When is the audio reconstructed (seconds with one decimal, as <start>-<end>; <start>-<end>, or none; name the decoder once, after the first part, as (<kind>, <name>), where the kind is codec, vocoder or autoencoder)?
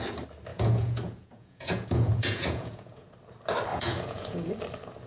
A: 0.5-3.1 (vocoder, Vocos); 3.7-4.5